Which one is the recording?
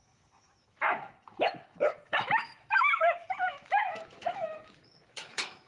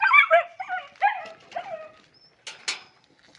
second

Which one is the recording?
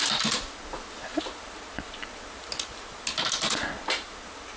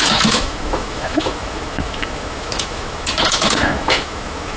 first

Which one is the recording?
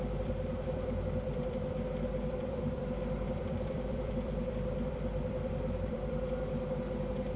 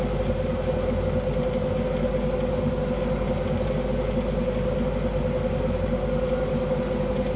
second